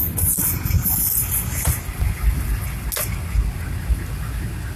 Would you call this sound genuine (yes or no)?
yes